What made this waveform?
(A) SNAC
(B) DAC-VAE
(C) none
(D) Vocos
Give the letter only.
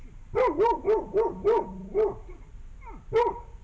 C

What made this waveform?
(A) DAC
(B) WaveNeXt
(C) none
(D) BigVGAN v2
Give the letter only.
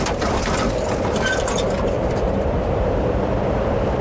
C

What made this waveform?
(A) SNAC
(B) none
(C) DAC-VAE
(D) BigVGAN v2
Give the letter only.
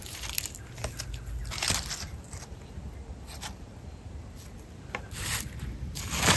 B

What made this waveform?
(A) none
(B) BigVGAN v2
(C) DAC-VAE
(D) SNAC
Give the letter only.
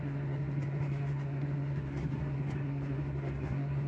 D